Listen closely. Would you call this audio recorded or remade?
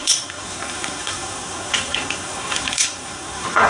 remade